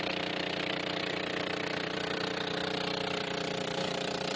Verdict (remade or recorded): remade